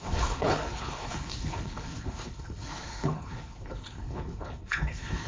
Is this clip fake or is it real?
fake